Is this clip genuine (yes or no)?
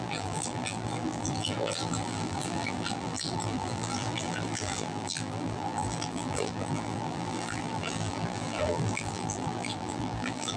no